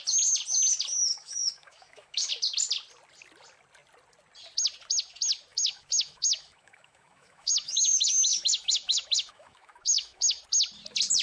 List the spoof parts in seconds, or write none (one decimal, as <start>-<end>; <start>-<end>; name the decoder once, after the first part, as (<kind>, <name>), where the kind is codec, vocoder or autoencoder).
1.1-2.3 (autoencoder, DAC-VAE); 5.5-10.4